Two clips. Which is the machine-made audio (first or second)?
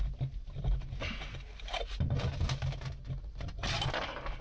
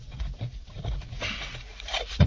second